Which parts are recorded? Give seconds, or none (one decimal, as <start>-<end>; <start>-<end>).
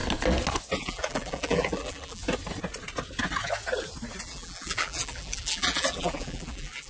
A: 0.0-0.8; 2.2-4.2